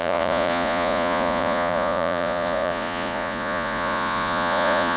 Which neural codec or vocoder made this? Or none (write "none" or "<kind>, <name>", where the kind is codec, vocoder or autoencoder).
vocoder, Vocos